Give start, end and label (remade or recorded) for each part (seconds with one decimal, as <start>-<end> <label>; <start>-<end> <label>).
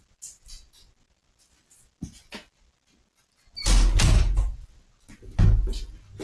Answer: 0.0-6.2 recorded